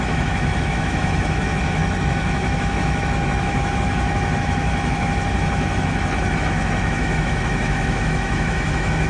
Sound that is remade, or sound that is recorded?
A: remade